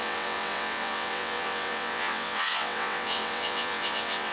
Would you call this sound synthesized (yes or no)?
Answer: yes